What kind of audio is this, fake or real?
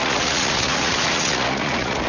fake